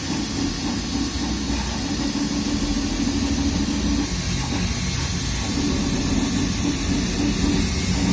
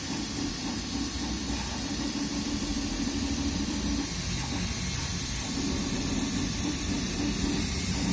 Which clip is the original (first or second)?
first